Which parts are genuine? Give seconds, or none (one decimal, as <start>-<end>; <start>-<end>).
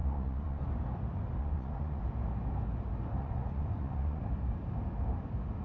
0.6-1.4; 2.0-3.2; 4.2-5.6